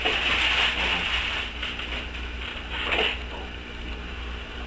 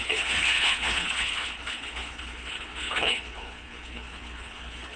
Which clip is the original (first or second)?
first